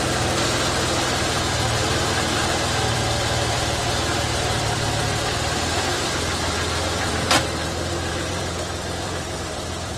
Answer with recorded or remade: remade